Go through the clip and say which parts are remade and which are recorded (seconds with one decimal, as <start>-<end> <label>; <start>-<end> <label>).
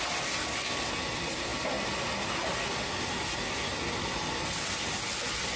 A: 0.0-5.6 recorded